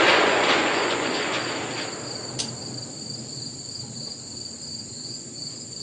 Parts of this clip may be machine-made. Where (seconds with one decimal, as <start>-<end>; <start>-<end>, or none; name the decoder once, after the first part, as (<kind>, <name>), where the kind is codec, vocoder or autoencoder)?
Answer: 0.0-1.4 (vocoder, Vocos); 4.9-5.8